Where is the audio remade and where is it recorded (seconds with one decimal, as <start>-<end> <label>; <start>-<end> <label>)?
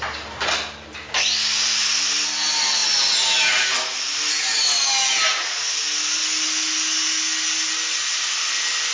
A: 0.0-8.9 recorded